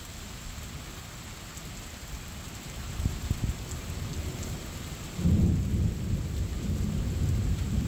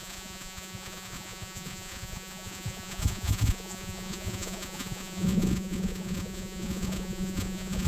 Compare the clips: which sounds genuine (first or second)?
first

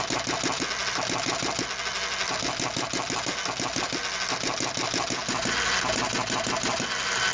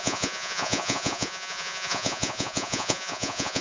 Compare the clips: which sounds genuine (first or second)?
first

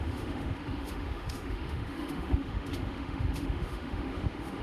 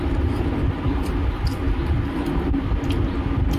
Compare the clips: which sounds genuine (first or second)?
second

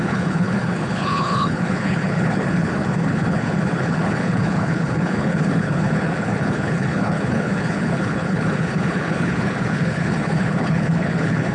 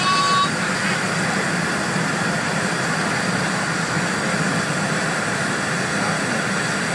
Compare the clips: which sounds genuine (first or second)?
second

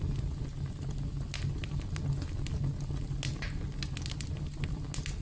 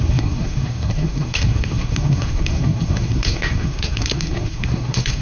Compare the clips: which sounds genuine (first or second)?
first